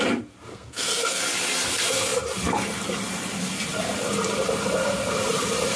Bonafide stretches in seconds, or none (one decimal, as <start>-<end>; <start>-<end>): 0.0-0.5; 1.2-5.8